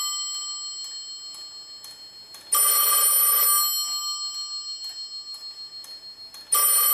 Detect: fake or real real